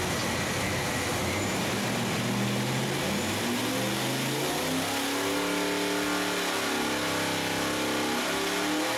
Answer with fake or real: real